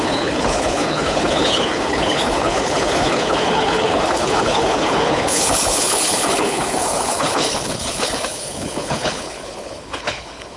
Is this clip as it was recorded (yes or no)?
no